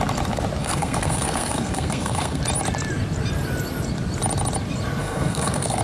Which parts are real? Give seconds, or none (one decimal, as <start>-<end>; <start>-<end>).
0.0-0.6; 2.4-5.0